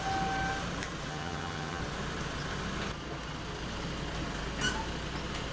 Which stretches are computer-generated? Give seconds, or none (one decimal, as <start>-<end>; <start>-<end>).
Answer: 1.1-1.8